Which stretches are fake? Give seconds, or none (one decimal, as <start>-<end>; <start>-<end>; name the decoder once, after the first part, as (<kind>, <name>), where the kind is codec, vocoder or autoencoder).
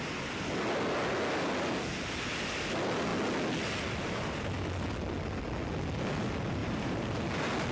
6.6-7.1 (vocoder, BigVGAN v2)